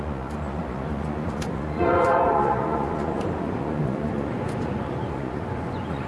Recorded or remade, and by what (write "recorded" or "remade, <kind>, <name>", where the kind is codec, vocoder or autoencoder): remade, vocoder, Vocos